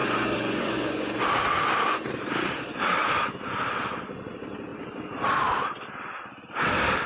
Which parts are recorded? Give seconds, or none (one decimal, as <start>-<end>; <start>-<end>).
1.2-7.1